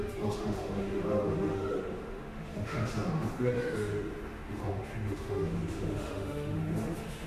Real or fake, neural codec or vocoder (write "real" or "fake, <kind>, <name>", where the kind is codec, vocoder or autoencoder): fake, autoencoder, DAC-VAE